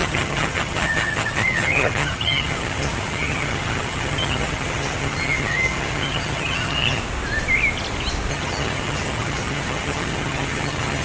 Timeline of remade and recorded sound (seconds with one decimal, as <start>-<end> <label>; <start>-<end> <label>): 0.0-7.0 remade; 7.0-8.3 recorded; 8.3-11.0 remade